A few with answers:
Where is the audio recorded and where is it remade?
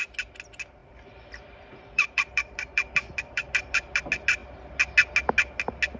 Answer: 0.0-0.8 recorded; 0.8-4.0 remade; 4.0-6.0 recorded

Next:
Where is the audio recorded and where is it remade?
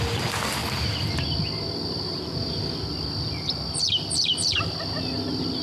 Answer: 0.0-5.6 recorded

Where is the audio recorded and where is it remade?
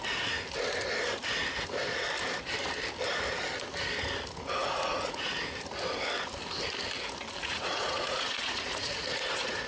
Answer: 0.0-4.6 recorded; 4.6-5.3 remade; 5.3-7.4 recorded; 7.4-9.7 remade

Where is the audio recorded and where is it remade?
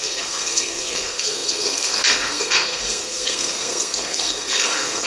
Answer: 0.0-5.1 remade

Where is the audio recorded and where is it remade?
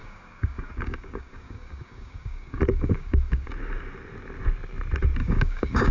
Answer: 0.0-3.5 remade; 3.5-5.2 recorded; 5.2-5.9 remade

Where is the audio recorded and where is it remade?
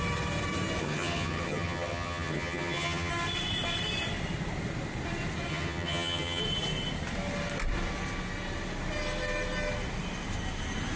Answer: 0.0-0.8 recorded; 0.8-3.1 remade; 3.1-5.5 recorded; 5.5-6.4 remade; 6.4-11.0 recorded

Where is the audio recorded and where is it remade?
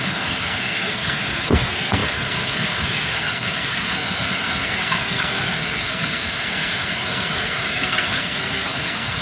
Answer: 0.0-9.2 remade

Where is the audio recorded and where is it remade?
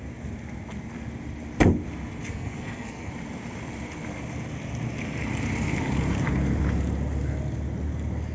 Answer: 0.0-2.3 recorded; 2.3-3.1 remade; 3.1-8.3 recorded